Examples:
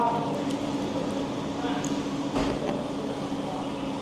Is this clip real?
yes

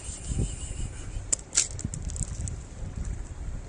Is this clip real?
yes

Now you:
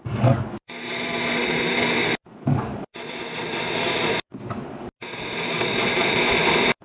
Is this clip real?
yes